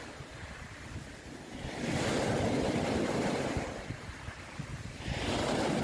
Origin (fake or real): real